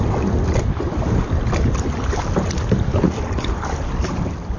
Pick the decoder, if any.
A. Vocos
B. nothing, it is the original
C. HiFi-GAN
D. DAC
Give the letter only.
B